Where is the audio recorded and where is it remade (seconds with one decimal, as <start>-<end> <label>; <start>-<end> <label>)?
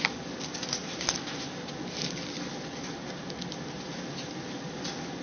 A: 0.0-5.2 recorded